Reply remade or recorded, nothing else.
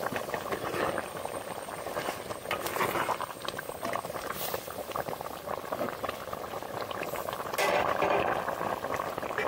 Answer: recorded